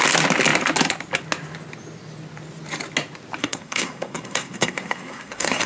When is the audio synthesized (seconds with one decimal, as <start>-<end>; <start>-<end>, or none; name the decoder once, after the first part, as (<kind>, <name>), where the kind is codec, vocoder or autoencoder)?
3.4-5.7 (codec, SNAC)